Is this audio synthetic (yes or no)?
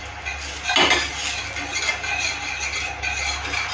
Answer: no